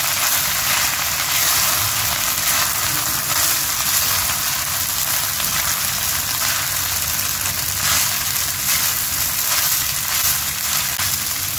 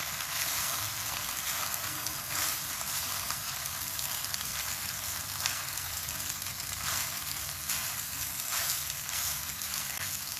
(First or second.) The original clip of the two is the first